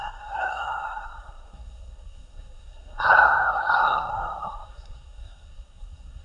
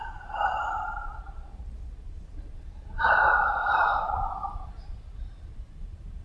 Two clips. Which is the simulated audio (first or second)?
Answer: first